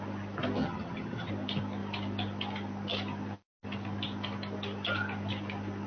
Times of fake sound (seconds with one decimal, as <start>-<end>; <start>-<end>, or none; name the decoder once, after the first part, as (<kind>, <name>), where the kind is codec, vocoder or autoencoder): 0.6-1.3 (vocoder, HiFi-GAN)